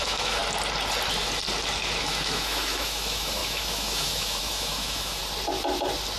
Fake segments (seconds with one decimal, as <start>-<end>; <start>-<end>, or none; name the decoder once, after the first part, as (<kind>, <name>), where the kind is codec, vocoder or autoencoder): 0.0-0.4 (autoencoder, DAC-VAE); 2.0-5.2